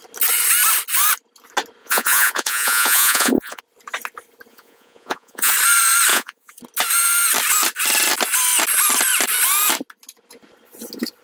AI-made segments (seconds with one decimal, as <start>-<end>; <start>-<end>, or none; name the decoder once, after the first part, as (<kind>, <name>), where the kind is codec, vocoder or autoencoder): 1.8-3.6 (vocoder, Vocos); 4.5-5.5; 6.1-6.6